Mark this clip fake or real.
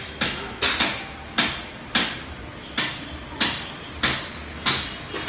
real